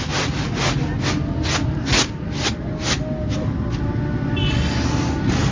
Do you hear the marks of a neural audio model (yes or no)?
no